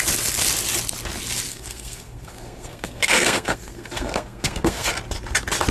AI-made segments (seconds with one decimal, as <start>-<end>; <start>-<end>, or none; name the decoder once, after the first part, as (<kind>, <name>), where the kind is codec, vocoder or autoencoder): 1.5-4.9 (codec, SNAC)